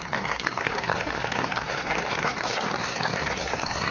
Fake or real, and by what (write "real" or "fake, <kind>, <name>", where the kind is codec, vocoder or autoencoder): fake, codec, SNAC